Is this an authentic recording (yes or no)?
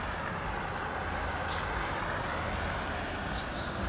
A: yes